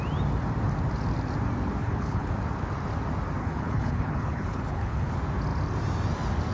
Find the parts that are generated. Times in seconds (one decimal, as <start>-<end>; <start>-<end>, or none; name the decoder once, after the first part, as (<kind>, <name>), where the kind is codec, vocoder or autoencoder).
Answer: 1.8-2.3 (codec, HILCodec); 3.4-5.1